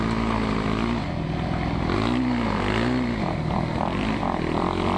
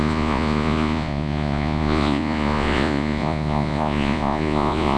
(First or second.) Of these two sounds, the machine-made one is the second